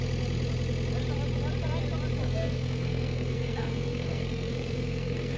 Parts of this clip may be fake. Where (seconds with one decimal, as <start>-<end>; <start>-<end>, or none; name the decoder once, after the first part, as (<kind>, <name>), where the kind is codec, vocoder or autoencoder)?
2.2-5.4 (codec, SNAC)